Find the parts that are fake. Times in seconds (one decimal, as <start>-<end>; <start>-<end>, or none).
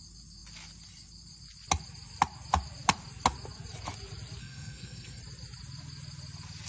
4.4-5.2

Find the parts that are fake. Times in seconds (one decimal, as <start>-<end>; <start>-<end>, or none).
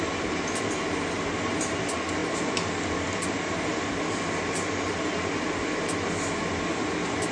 none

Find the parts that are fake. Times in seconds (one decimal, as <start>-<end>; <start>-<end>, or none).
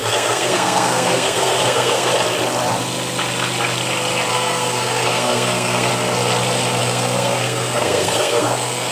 0.0-2.1; 4.3-5.9; 6.8-8.9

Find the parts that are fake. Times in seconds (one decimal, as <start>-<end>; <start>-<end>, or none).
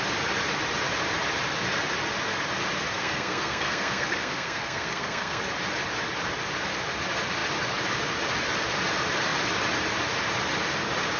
2.9-5.4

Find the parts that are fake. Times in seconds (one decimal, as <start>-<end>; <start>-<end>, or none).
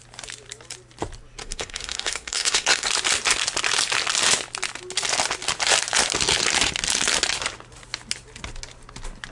1.4-2.9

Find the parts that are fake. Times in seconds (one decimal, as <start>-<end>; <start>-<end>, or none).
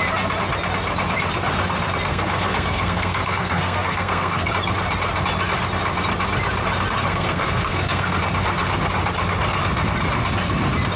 2.1-4.5; 7.0-8.2